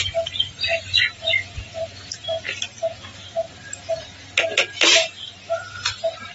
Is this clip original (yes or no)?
yes